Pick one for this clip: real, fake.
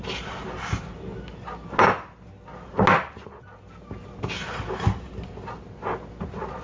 real